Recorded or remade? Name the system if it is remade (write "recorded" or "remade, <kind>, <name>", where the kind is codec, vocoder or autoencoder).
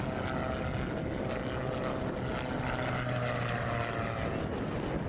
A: recorded